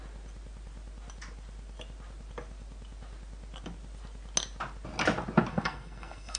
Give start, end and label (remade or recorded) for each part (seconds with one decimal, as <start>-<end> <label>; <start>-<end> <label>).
0.0-5.5 recorded; 5.5-6.4 remade

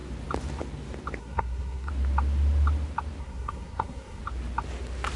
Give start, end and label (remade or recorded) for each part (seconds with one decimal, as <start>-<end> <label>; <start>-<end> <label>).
0.0-1.2 recorded; 1.2-1.9 remade; 1.9-3.2 recorded; 3.2-4.2 remade; 4.2-5.2 recorded

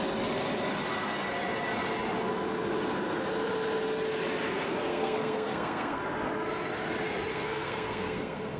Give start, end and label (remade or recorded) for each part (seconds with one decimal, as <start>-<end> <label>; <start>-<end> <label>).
0.0-4.9 recorded; 4.9-6.0 remade; 6.0-7.3 recorded; 7.3-8.6 remade